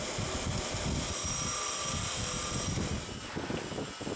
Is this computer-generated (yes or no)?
no